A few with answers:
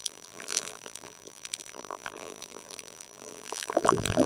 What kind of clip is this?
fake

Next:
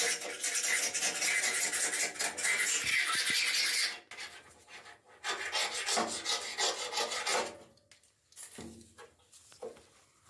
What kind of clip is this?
real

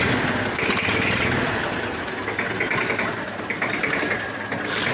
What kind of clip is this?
real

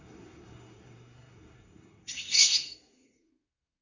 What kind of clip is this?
fake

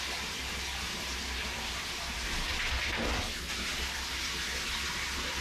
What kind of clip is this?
real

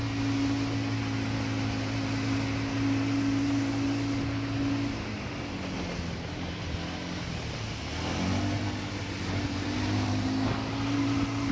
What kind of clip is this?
real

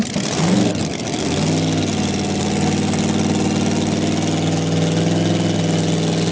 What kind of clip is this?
real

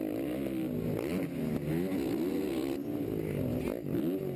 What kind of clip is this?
real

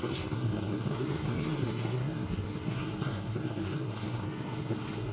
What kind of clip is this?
fake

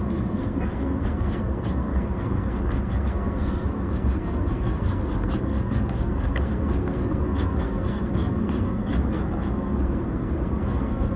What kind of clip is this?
fake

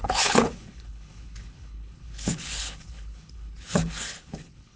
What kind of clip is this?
fake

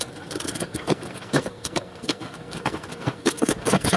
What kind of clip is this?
fake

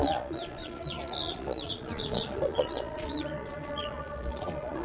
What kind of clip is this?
fake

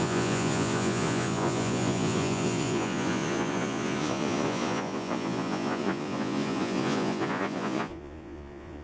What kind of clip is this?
fake